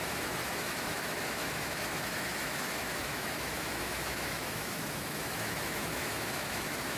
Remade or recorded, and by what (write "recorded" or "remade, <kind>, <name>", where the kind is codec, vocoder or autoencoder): remade, autoencoder, DAC-VAE